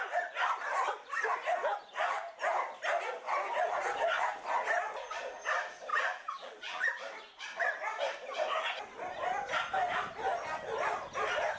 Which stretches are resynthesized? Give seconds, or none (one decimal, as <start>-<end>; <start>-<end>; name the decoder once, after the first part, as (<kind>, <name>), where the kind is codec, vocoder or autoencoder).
5.9-6.9 (vocoder, BigVGAN v2)